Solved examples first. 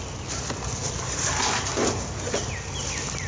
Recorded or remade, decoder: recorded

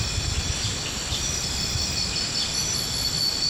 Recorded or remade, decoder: recorded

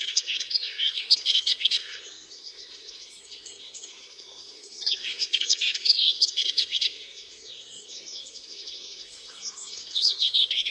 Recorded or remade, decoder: remade, codec, SNAC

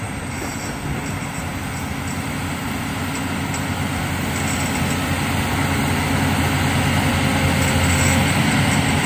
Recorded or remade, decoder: recorded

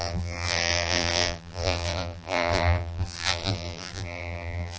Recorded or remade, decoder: remade, vocoder, BigVGAN v2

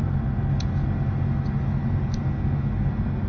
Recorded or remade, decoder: recorded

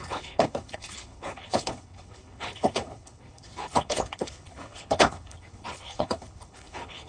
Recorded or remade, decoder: remade, codec, HILCodec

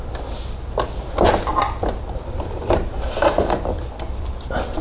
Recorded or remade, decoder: recorded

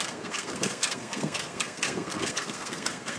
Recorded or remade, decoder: remade, codec, SNAC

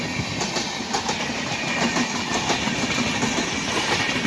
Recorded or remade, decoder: recorded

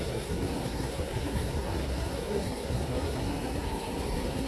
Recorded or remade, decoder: remade, codec, SNAC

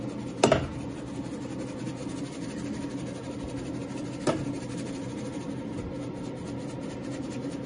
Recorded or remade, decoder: recorded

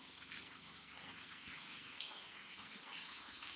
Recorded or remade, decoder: remade, codec, SNAC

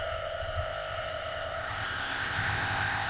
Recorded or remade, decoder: remade, codec, ZipCodec